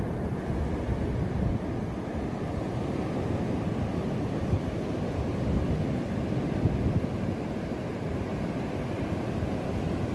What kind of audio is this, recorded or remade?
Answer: recorded